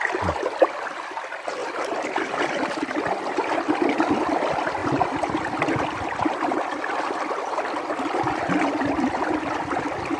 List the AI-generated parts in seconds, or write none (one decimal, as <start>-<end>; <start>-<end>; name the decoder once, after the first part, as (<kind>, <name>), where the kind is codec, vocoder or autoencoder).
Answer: 1.6-2.3 (vocoder, BigVGAN v2); 4.8-5.6